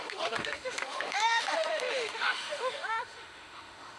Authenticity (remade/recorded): remade